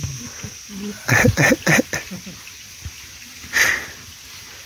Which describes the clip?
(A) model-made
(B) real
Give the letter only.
B